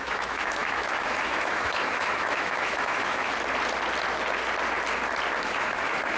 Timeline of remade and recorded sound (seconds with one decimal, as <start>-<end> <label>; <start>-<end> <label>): 0.0-3.3 remade; 3.3-5.4 recorded; 5.4-6.2 remade

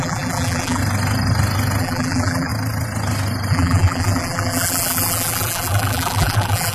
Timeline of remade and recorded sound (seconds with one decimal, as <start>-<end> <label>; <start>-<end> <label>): 0.0-0.8 remade; 0.8-1.8 recorded; 1.8-2.5 remade; 2.5-3.5 recorded; 3.5-6.7 remade